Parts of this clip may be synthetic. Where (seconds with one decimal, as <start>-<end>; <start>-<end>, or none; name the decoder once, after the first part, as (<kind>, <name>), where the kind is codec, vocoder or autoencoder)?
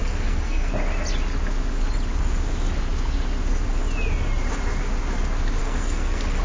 0.0-0.7 (codec, SNAC); 5.6-6.4